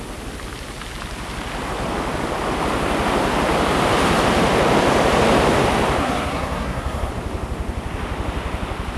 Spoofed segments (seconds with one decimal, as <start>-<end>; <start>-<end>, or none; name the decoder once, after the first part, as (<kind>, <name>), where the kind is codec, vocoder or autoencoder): 6.0-7.1 (codec, SNAC)